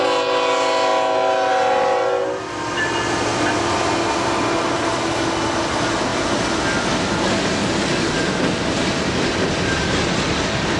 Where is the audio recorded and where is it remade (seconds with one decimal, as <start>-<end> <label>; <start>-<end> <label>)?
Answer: 0.0-10.8 recorded